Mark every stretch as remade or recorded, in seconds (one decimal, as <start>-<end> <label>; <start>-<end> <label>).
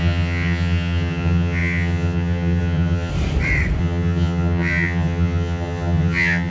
0.0-3.1 remade; 3.1-3.8 recorded; 3.8-6.5 remade